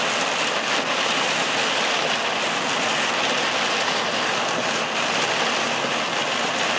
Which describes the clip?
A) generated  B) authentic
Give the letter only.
B